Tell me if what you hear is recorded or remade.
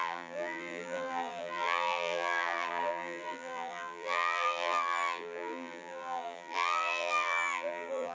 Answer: remade